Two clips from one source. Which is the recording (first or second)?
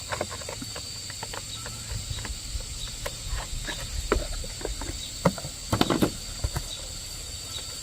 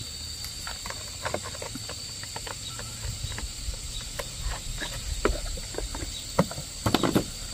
first